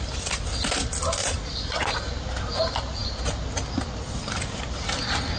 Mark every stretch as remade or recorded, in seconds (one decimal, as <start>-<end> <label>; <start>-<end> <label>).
0.0-1.2 recorded; 1.2-1.9 remade; 1.9-5.4 recorded